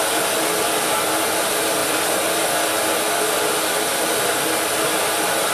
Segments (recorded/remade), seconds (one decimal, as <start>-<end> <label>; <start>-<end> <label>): 0.0-5.5 recorded